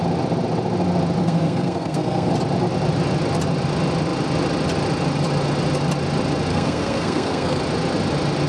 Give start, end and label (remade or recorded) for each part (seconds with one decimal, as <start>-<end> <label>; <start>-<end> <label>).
0.0-1.2 recorded; 1.2-2.3 remade; 2.3-6.5 recorded; 6.5-7.6 remade; 7.6-8.5 recorded